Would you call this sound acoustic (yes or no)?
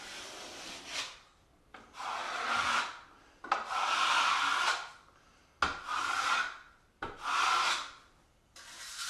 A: yes